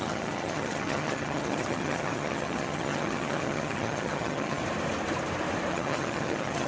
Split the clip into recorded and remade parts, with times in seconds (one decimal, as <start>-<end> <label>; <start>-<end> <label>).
0.0-4.6 remade; 4.6-5.7 recorded; 5.7-6.7 remade